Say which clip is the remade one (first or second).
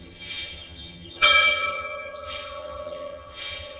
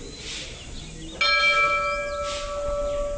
first